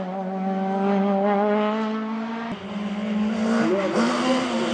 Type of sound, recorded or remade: recorded